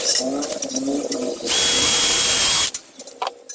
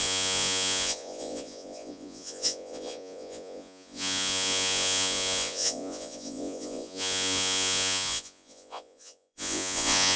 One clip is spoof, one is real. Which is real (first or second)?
first